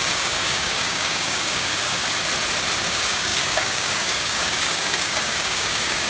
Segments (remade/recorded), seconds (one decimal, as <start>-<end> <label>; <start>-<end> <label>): 0.0-2.0 remade; 2.0-2.8 recorded; 2.8-6.1 remade